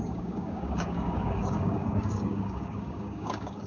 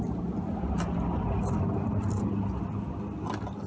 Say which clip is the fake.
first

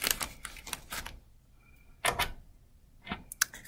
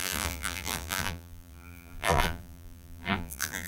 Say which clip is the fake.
second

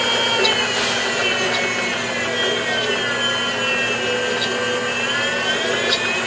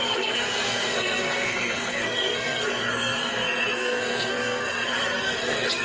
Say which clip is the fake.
second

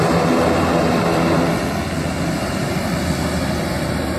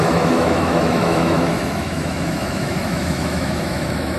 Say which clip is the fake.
second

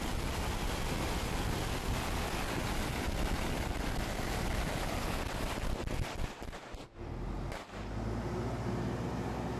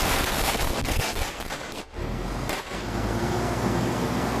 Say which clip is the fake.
second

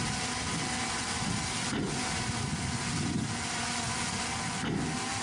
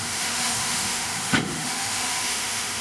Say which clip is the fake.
second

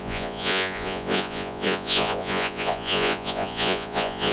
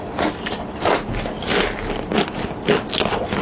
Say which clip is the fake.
first